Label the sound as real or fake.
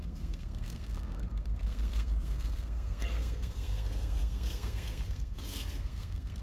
fake